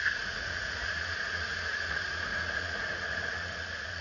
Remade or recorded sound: remade